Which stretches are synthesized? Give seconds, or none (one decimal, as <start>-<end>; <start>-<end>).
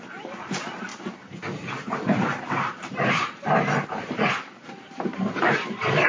0.0-6.1